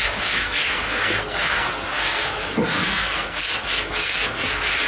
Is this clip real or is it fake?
fake